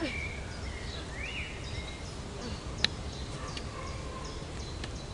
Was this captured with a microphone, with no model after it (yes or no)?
yes